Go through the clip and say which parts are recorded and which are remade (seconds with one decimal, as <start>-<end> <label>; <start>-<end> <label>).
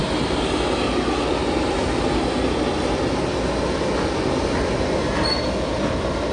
0.0-6.3 recorded